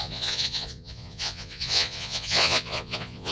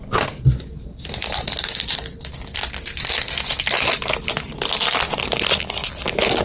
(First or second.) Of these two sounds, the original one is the second